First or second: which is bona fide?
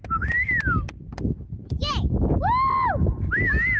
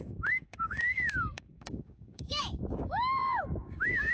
first